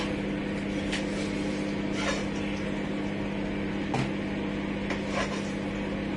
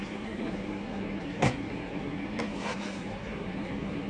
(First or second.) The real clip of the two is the first